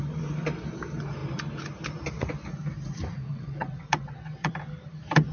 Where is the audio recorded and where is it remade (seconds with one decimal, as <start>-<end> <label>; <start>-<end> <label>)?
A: 0.0-3.3 recorded; 3.3-4.5 remade; 4.5-5.3 recorded